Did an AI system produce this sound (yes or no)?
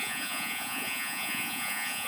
yes